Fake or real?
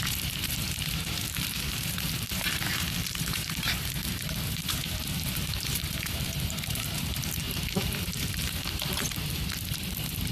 fake